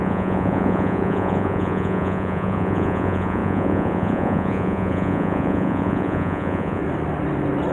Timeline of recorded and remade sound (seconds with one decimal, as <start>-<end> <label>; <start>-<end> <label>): 0.0-6.8 remade; 6.8-7.7 recorded